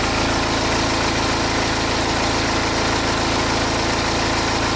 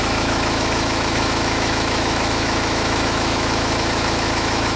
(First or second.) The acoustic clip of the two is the first